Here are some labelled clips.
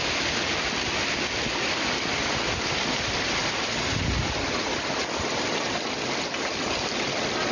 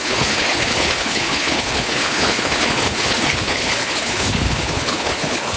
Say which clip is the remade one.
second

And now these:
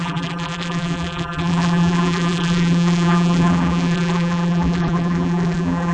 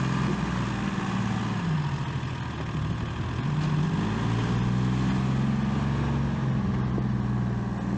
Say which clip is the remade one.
first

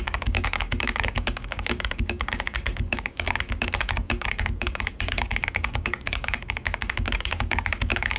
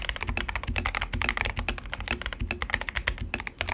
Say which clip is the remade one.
first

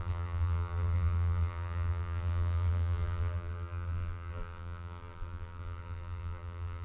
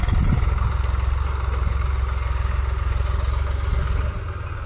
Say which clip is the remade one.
first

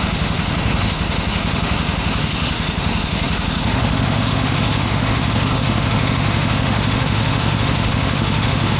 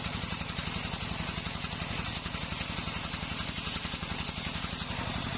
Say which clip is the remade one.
first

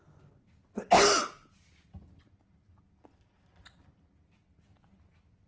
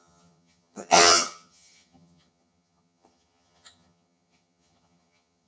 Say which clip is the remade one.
second